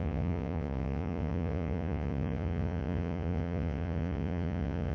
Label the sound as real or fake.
fake